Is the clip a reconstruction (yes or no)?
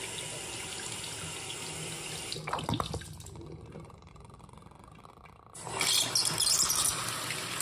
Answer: no